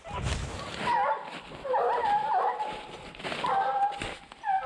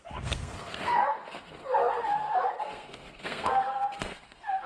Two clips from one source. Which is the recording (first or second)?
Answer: first